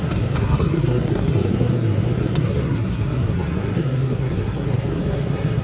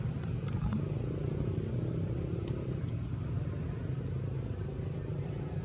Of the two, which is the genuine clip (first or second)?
second